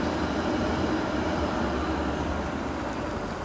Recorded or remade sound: recorded